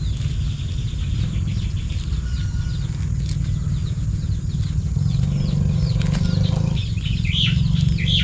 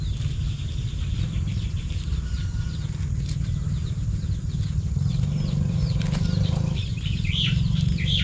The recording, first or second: first